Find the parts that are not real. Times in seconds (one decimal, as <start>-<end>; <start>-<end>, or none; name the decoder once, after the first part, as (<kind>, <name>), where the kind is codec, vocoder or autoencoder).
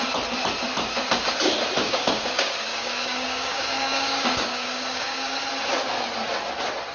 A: 1.8-5.4 (codec, DAC)